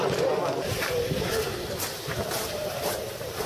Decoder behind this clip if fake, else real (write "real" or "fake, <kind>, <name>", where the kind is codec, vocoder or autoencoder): fake, vocoder, BigVGAN v2